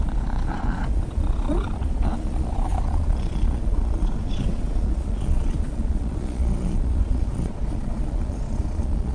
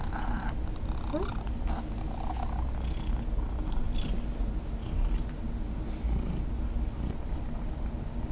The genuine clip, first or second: second